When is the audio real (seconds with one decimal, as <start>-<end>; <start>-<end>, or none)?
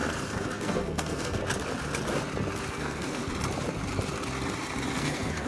1.4-2.7; 3.2-5.0